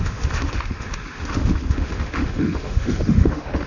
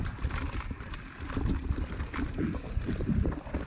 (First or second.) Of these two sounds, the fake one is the first